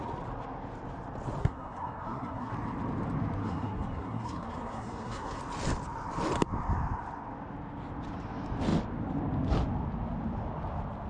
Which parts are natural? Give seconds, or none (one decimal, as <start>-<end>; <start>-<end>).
0.0-1.4; 2.5-3.4; 5.4-11.1